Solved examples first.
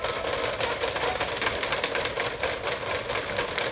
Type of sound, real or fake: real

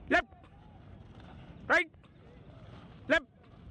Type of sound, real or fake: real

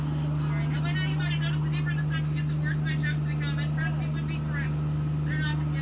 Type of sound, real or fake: real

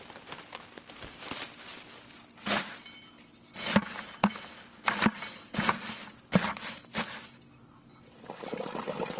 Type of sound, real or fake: real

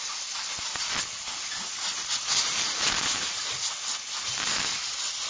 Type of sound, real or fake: real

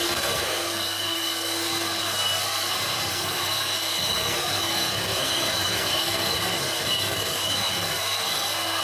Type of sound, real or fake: fake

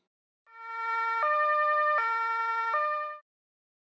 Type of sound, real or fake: real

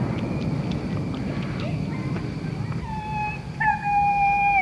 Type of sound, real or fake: real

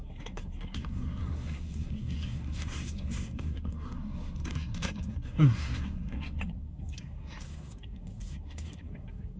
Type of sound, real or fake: fake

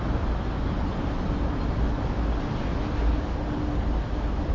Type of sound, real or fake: real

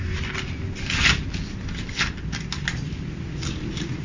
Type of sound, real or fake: real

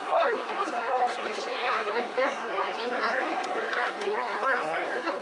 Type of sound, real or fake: fake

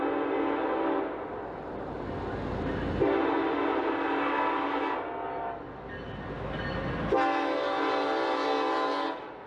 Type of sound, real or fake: real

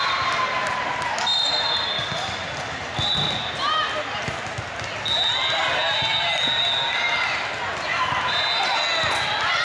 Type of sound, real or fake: real